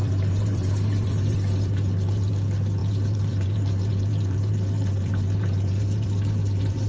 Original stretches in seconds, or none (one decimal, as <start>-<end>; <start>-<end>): 2.3-2.8